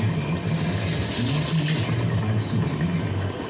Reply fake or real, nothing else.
real